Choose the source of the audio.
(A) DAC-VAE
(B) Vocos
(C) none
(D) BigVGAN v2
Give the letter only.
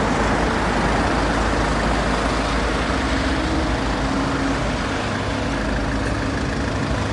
C